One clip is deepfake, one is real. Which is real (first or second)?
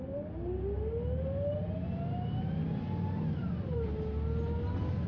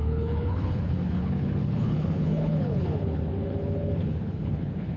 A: first